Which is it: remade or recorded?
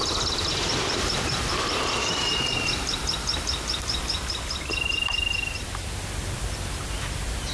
recorded